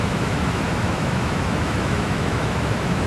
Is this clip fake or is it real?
fake